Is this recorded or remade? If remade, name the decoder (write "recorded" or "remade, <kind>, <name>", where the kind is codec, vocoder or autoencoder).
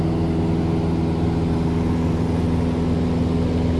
recorded